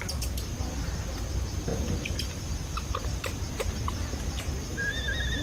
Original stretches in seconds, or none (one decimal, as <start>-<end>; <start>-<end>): 0.0-1.7; 4.9-5.4